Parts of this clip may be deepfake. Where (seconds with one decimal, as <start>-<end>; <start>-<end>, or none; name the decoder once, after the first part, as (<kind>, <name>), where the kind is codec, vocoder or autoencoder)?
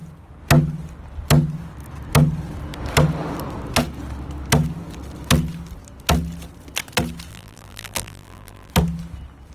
7.3-8.7 (vocoder, BigVGAN v2)